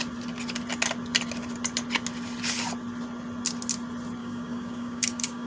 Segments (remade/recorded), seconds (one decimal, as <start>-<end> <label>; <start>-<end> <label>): 0.0-4.2 recorded; 4.2-5.5 remade